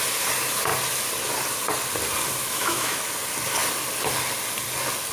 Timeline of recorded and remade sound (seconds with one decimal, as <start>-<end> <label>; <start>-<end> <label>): 0.0-2.4 recorded; 2.4-3.0 remade; 3.0-5.1 recorded